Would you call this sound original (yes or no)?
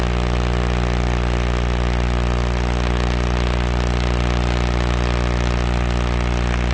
yes